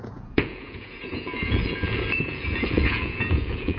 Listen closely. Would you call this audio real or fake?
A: fake